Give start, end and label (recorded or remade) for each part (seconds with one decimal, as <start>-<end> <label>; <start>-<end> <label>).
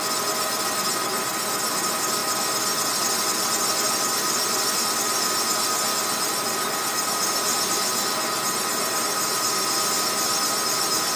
0.0-11.2 recorded